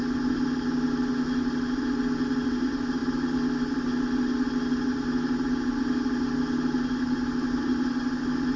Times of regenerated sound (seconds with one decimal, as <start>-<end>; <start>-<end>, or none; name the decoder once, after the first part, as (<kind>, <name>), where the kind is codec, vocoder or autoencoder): none